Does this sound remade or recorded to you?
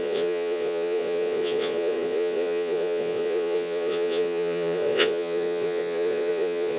remade